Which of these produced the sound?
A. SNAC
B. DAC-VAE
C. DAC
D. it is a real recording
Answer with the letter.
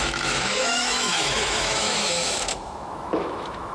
B